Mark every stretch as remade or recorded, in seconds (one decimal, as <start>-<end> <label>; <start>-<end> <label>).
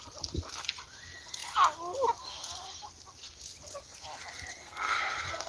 0.0-4.5 recorded; 4.5-5.5 remade